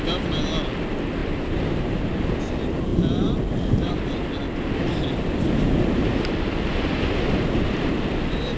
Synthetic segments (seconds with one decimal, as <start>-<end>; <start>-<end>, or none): 1.2-2.2; 6.7-7.9

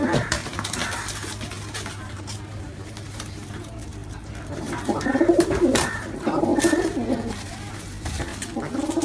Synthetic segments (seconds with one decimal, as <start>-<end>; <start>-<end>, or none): 0.0-0.4; 2.0-6.5; 7.3-8.3

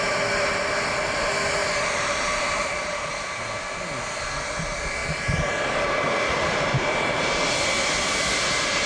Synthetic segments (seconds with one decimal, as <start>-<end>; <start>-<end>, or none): 1.6-3.6